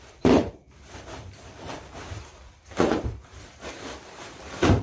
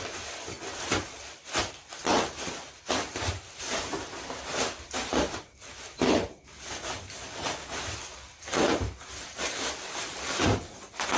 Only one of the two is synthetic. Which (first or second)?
first